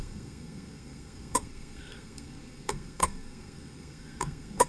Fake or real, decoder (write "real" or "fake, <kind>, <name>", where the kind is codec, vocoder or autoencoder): fake, codec, SNAC